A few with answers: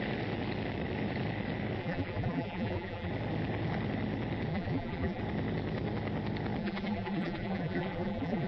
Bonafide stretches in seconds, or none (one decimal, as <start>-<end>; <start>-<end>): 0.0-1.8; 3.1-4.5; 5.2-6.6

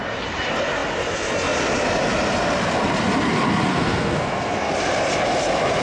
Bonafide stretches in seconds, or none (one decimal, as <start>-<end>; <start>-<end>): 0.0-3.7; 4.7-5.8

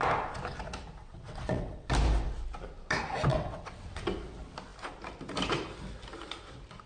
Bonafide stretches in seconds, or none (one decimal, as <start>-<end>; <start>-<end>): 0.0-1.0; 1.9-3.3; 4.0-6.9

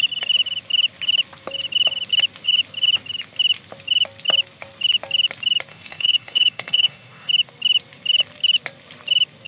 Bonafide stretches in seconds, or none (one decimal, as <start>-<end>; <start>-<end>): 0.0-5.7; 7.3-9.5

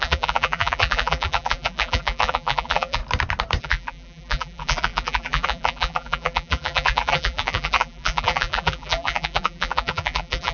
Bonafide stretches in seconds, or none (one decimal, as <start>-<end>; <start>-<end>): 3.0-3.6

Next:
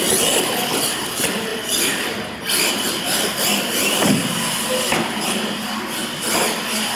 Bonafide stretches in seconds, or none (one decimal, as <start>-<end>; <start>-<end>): 0.0-7.0

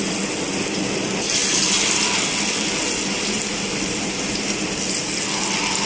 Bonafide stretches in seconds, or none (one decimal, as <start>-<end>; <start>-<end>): 0.0-5.9